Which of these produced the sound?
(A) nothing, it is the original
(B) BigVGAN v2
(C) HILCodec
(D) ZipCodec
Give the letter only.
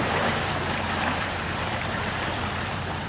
B